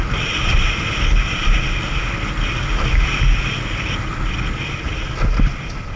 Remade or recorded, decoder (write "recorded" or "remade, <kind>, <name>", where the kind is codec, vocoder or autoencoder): recorded